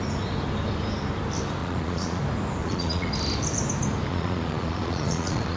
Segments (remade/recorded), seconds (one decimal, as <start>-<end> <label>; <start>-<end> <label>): 0.0-1.6 recorded; 1.6-2.2 remade; 2.2-2.6 recorded; 2.6-3.1 remade; 3.1-4.1 recorded; 4.1-5.6 remade